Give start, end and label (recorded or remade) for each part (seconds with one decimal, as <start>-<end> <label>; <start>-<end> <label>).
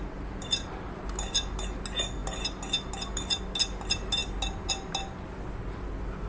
0.0-6.3 recorded